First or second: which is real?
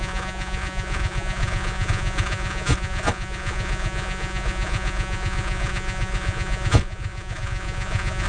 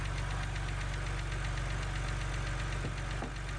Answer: second